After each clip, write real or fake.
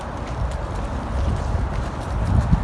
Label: real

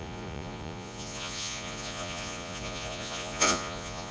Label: fake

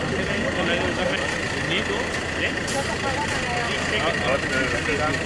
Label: real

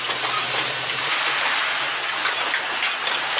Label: real